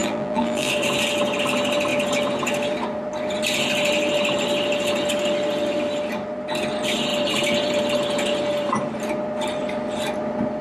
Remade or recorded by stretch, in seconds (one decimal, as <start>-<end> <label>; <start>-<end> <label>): 0.0-0.7 remade; 0.7-10.6 recorded

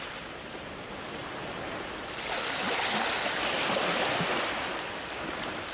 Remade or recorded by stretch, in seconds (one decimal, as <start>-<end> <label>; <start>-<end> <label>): 0.0-1.2 remade; 1.2-4.6 recorded; 4.6-5.7 remade